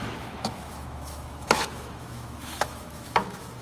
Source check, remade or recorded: remade